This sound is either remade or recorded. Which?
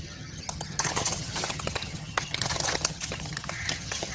remade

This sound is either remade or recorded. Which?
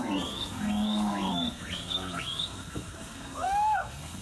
remade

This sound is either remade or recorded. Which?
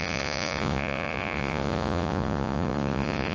remade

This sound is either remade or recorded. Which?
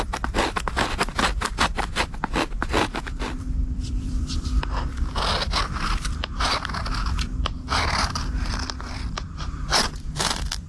remade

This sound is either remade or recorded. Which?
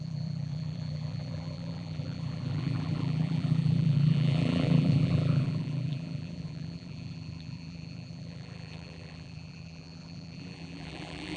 remade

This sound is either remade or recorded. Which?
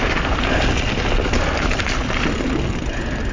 recorded